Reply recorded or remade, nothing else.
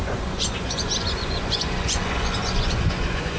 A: remade